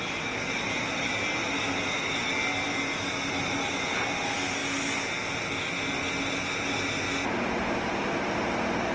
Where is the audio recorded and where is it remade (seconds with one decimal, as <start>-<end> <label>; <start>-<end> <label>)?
0.0-8.9 recorded